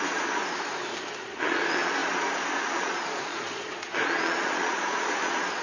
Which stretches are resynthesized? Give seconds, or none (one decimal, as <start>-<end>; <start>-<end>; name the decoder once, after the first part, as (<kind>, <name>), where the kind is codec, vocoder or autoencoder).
0.0-0.4 (vocoder, Vocos); 1.2-5.6